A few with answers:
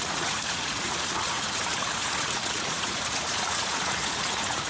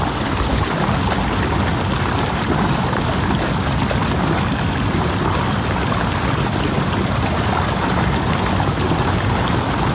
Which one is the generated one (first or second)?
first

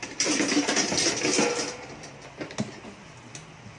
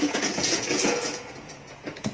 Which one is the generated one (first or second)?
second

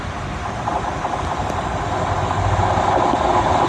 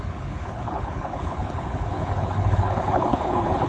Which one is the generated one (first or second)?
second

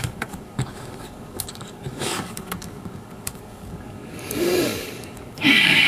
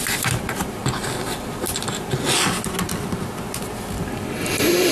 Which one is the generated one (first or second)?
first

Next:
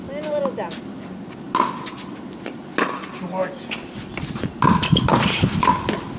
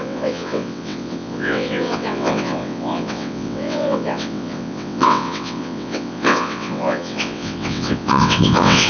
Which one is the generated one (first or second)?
second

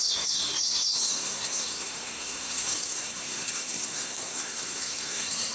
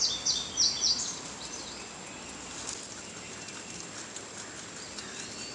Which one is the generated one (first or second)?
first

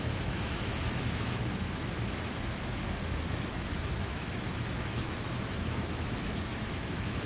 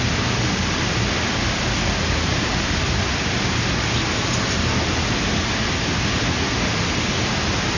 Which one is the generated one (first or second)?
first